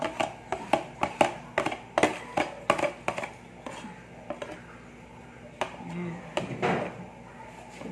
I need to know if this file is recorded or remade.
recorded